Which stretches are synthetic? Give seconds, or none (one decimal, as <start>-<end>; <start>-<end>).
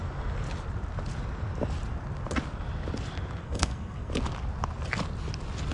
3.4-4.1